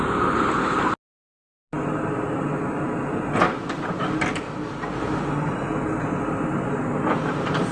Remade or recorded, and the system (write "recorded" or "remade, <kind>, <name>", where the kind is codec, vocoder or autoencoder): recorded